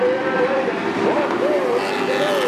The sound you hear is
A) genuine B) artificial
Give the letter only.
A